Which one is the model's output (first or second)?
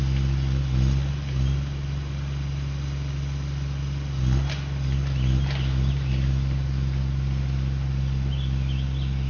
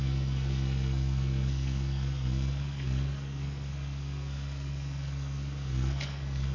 second